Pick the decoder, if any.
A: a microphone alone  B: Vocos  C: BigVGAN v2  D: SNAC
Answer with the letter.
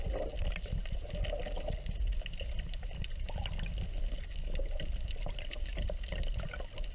A